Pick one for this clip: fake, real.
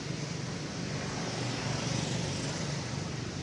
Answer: real